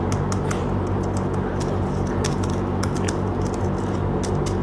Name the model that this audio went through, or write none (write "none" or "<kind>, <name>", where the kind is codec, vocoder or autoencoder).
none